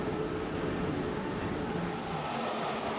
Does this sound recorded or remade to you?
recorded